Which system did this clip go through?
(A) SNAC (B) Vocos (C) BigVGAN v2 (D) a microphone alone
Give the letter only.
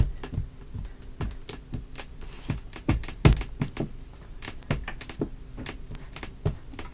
D